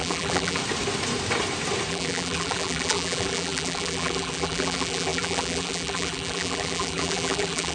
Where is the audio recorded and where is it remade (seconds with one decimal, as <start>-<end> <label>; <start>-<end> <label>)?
0.0-0.6 remade; 0.6-1.9 recorded; 1.9-7.7 remade